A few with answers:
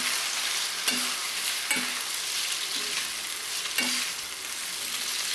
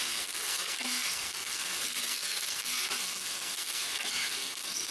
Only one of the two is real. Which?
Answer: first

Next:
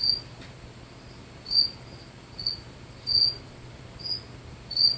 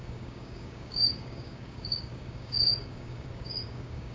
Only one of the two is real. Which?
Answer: first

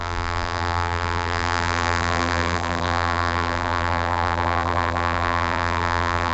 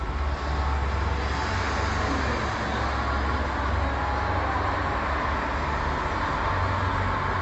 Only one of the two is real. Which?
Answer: second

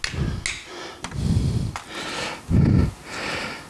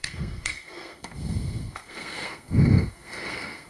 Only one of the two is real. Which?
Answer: first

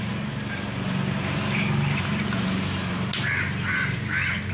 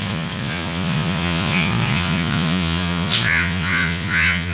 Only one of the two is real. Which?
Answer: first